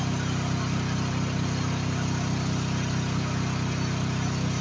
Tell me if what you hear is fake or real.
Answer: real